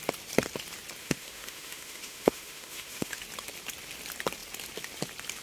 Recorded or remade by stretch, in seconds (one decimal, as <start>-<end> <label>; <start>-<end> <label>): 0.0-1.0 recorded; 1.0-3.2 remade; 3.2-5.4 recorded